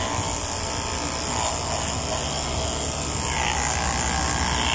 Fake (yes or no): no